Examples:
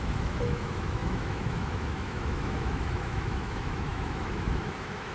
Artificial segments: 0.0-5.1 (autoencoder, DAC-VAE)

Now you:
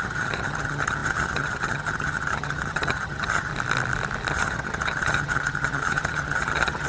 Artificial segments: 0.0-3.5 (vocoder, HiFi-GAN); 4.3-6.9

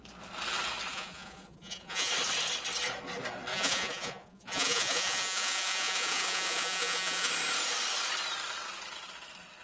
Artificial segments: 0.9-2.1 (vocoder, Vocos); 3.5-7.3

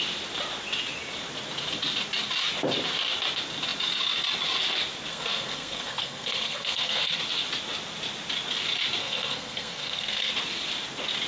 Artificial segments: 5.1-7.2 (codec, SNAC); 9.0-10.3

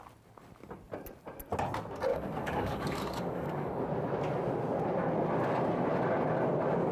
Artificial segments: 2.1-3.8 (codec, DAC)